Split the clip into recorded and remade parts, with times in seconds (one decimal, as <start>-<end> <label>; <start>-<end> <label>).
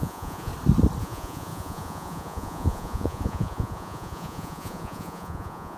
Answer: 0.0-0.5 remade; 0.5-1.0 recorded; 1.0-5.8 remade